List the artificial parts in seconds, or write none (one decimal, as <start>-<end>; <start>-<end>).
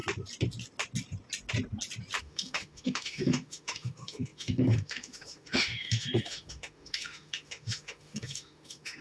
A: 2.2-9.0